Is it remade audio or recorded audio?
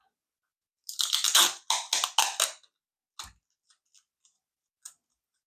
recorded